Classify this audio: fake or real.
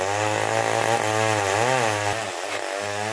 real